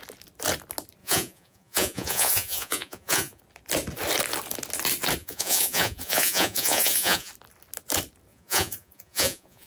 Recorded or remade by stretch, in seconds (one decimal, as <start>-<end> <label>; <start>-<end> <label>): 0.0-1.0 recorded; 1.0-3.4 remade; 3.4-5.2 recorded; 5.2-7.3 remade; 7.3-8.3 recorded; 8.3-9.7 remade